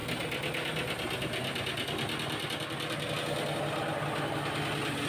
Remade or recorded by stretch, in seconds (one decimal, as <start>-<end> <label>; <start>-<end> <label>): 0.0-5.1 recorded